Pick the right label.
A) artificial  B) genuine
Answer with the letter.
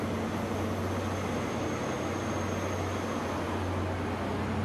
B